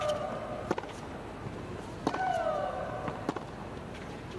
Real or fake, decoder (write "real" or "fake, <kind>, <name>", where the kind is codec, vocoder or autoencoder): real